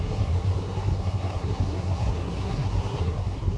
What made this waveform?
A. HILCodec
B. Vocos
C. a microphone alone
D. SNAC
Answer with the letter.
D